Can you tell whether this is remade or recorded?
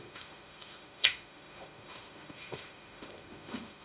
remade